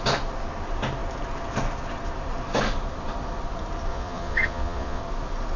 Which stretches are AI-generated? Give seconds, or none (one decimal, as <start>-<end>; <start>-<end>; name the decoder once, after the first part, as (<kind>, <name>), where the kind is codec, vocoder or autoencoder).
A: 3.9-5.0 (vocoder, Vocos)